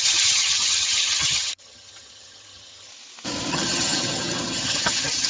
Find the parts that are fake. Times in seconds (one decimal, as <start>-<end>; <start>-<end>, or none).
0.0-2.9; 3.5-5.3